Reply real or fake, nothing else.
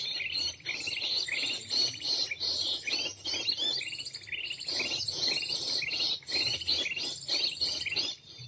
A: real